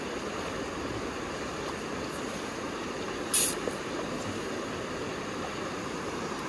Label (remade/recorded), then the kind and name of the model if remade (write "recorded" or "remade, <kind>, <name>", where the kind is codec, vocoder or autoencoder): recorded